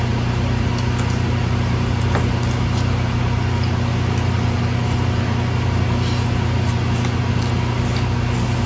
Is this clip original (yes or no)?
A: yes